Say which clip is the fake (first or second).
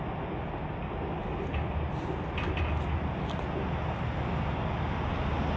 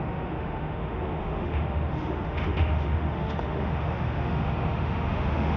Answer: second